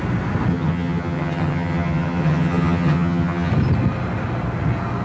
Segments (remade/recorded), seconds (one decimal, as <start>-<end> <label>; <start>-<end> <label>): 0.0-0.5 recorded; 0.5-3.5 remade; 3.5-5.0 recorded